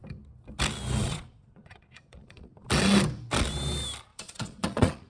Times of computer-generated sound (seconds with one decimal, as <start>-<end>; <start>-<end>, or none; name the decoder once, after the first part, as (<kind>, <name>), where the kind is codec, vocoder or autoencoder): 1.0-2.7 (vocoder, Vocos); 4.1-5.1